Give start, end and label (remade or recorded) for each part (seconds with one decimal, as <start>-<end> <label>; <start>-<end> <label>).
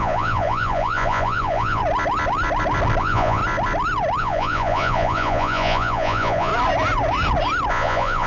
0.0-1.8 remade; 1.8-3.0 recorded; 3.0-3.4 remade; 3.4-4.2 recorded; 4.2-6.5 remade; 6.5-7.7 recorded; 7.7-8.3 remade